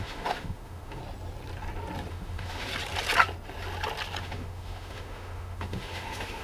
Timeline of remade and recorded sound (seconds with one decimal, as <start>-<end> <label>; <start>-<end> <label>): 0.0-1.0 remade; 1.0-2.1 recorded; 2.1-2.7 remade; 2.7-4.2 recorded; 4.2-6.4 remade